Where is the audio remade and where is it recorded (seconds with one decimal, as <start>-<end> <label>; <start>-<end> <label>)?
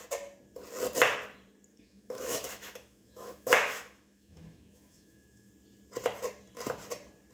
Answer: 0.0-1.7 recorded; 1.7-5.5 remade; 5.5-7.3 recorded